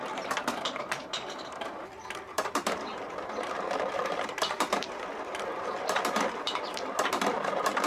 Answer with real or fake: fake